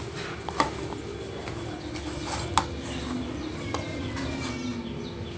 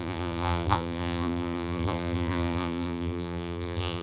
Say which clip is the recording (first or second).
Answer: first